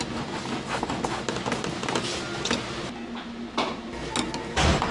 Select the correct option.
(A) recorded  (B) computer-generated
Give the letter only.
A